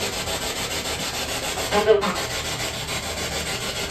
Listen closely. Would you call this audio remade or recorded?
recorded